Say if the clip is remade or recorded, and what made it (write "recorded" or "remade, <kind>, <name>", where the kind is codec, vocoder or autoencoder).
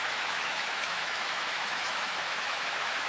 remade, autoencoder, DAC-VAE